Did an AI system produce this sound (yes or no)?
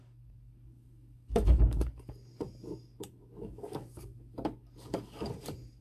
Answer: yes